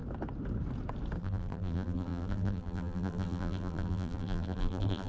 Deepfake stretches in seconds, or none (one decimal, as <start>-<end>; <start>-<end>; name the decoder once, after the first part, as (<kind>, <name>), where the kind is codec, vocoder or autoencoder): 1.2-5.1 (vocoder, BigVGAN v2)

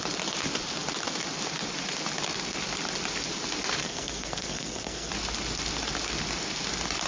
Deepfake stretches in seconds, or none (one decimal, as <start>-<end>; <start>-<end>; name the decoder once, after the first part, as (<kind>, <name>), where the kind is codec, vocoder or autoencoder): 3.8-5.1 (codec, SNAC)

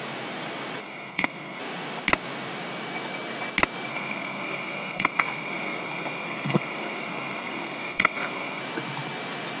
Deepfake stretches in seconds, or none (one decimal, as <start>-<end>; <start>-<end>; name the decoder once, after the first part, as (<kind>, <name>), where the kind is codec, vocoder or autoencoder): 0.8-1.6 (codec, SNAC); 3.9-8.6

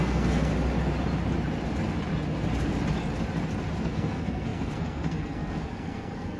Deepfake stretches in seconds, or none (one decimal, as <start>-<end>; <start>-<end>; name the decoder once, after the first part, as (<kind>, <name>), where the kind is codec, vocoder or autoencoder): 0.0-0.5 (codec, SNAC); 3.8-6.4